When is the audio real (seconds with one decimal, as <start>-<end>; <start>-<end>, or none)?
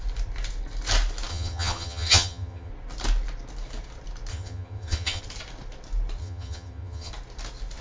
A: 0.0-1.3; 2.7-4.3; 5.2-6.2; 7.1-7.8